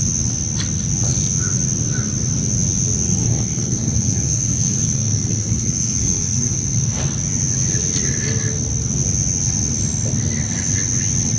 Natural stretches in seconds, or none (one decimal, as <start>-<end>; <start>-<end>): 0.0-3.2; 7.0-11.4